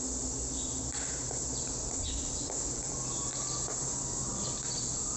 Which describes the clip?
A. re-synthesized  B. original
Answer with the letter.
B